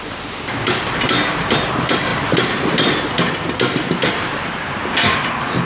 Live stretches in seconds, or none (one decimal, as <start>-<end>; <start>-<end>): 0.0-5.7